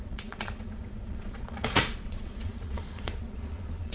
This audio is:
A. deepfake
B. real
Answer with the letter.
A